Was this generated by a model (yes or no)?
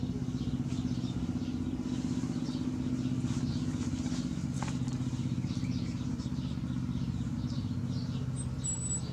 no